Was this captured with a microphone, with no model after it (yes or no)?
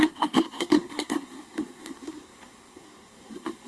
no